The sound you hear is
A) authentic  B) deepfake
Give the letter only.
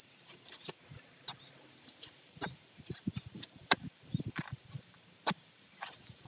B